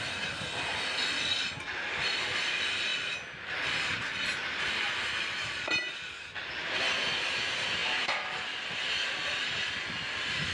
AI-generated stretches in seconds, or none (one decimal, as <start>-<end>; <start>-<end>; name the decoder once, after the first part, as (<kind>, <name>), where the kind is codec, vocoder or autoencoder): none